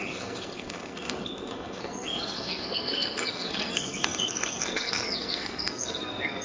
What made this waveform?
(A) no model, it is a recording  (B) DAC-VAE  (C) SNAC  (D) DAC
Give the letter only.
C